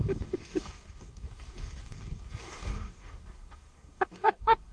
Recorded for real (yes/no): no